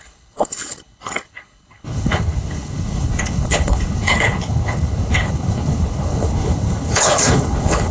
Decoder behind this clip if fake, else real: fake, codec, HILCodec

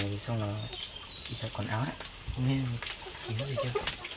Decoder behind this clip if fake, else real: real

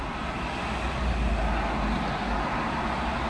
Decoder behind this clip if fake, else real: real